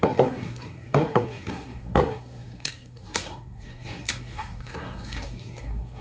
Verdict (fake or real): fake